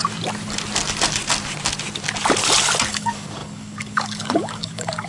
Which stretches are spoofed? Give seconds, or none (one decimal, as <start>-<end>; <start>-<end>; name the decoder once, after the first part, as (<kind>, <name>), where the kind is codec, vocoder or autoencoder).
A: 2.9-5.1 (codec, DAC)